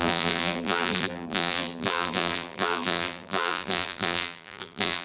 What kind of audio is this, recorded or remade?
remade